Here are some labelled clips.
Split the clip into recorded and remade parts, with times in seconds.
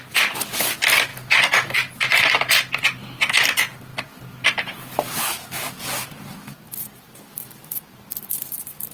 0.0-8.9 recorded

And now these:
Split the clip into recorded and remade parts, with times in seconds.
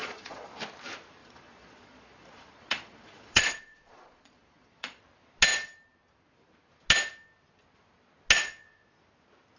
0.0-0.6 remade; 0.6-1.2 recorded; 1.2-5.0 remade; 5.0-9.6 recorded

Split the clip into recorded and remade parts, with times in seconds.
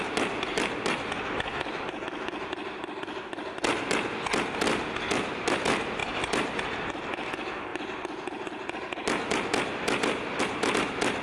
0.0-11.2 recorded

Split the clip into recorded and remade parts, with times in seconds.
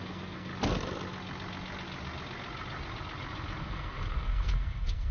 0.0-0.5 remade; 0.5-3.6 recorded; 3.6-5.1 remade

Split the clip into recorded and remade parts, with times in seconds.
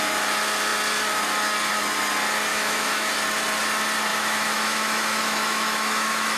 0.0-2.5 recorded; 2.5-3.1 remade; 3.1-4.1 recorded; 4.1-6.4 remade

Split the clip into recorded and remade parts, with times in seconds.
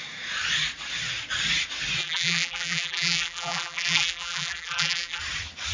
0.0-2.0 recorded; 2.0-5.2 remade; 5.2-5.7 recorded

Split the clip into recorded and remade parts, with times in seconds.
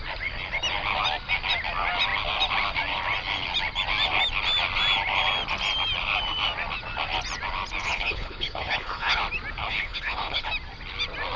0.0-7.8 recorded; 7.8-9.2 remade; 9.2-9.6 recorded; 9.6-10.5 remade; 10.5-11.4 recorded